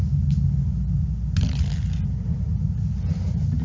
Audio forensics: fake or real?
real